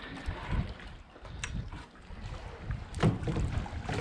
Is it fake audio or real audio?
real